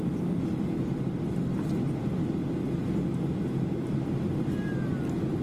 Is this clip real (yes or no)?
yes